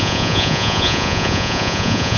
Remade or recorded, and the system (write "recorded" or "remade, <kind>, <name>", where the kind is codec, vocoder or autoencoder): remade, vocoder, Vocos